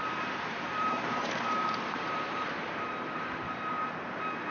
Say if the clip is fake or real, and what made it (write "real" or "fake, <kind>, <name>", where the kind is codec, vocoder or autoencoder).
fake, vocoder, BigVGAN v2